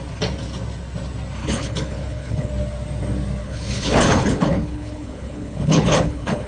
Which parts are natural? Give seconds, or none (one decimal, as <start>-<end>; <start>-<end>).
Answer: 0.0-1.4; 2.5-3.4